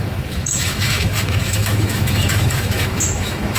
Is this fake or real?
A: fake